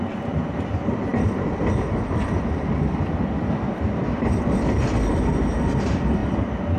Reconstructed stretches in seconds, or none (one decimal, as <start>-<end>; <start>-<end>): none